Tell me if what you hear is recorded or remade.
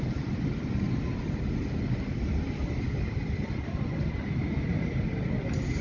recorded